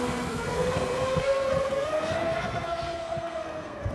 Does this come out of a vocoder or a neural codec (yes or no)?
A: yes